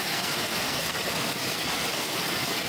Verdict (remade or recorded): remade